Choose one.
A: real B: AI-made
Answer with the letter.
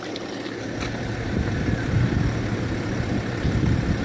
B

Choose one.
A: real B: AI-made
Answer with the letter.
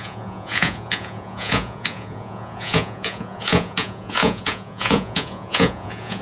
B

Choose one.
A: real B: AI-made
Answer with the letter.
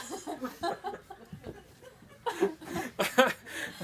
A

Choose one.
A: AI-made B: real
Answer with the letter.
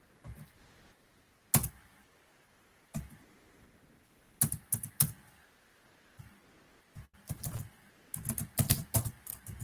B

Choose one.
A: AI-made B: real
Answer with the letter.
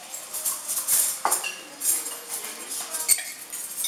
B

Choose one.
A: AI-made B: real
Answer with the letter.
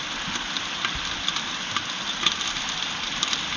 B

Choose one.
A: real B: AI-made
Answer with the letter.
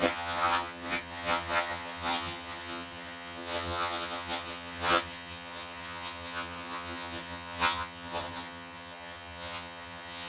B